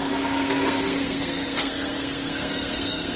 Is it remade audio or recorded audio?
remade